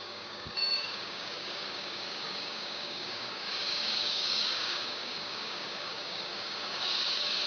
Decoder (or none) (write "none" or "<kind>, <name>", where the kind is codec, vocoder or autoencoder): codec, DAC